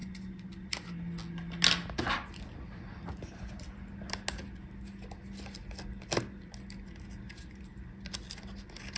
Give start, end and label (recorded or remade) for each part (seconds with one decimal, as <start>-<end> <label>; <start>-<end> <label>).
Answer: 0.0-9.0 recorded

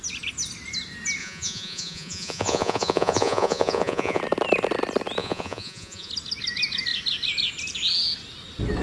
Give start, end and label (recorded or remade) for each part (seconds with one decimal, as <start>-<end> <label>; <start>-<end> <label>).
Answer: 0.0-1.2 recorded; 1.2-4.2 remade; 4.2-5.2 recorded; 5.2-6.1 remade; 6.1-8.8 recorded